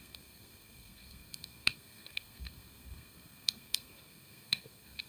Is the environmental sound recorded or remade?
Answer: remade